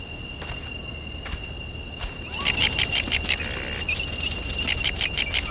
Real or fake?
real